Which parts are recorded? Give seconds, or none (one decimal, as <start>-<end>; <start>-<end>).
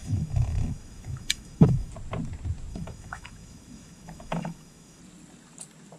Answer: 1.9-2.7; 5.0-6.0